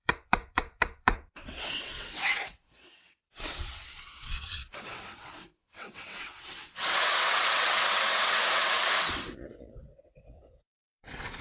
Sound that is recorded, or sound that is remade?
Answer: remade